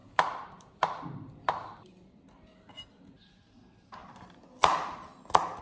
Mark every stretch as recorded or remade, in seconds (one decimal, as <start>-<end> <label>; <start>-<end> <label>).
0.0-5.6 recorded